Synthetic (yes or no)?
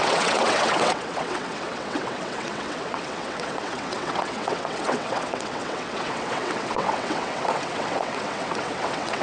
yes